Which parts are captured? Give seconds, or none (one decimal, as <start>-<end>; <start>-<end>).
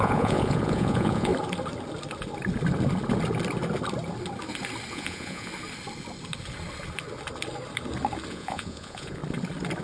1.3-4.9; 5.5-8.3; 9.2-9.8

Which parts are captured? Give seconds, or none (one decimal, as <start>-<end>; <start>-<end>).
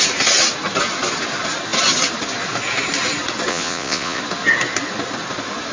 0.0-3.5; 4.2-5.7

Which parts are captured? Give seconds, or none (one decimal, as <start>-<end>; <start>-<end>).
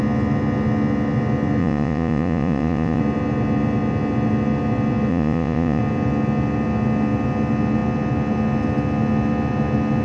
0.0-1.6; 3.0-5.1; 5.8-10.0